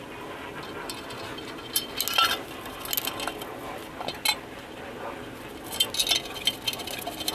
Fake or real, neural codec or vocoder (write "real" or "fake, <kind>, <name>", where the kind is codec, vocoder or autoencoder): real